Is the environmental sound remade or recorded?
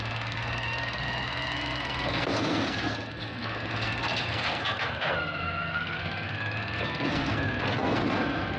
remade